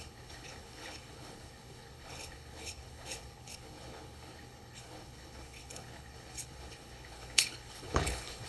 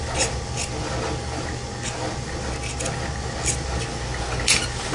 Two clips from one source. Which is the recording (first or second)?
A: second